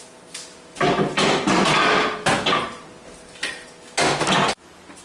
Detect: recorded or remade recorded